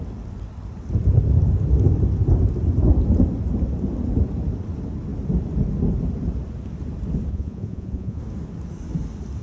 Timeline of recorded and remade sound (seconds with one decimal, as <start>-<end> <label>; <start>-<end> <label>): 0.0-7.3 recorded; 7.3-8.2 remade; 8.2-9.4 recorded